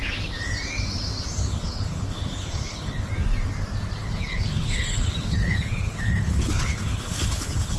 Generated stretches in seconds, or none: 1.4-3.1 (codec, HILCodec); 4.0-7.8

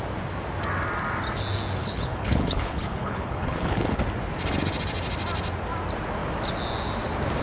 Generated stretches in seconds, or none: 1.8-4.0 (codec, HILCodec)

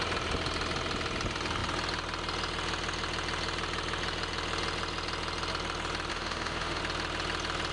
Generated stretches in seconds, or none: 6.1-6.8 (autoencoder, DAC-VAE)

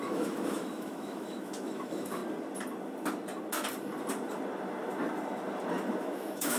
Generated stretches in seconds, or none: 0.0-2.2 (autoencoder, DAC-VAE); 6.0-6.6

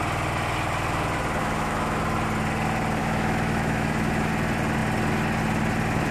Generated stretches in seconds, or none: 1.4-2.0 (autoencoder, DAC-VAE); 3.0-4.3

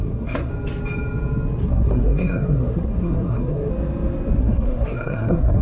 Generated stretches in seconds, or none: 0.0-0.5 (codec, SNAC); 1.6-3.7; 4.4-5.6

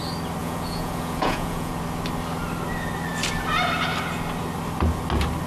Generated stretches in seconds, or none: 0.4-1.7 (vocoder, Vocos)